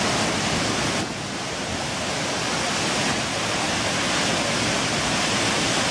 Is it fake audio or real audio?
real